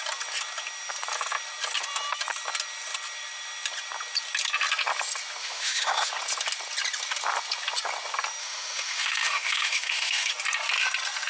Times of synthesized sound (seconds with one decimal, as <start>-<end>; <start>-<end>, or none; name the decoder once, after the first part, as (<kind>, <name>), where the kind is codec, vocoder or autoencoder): 5.4-6.1 (autoencoder, DAC-VAE); 8.4-10.3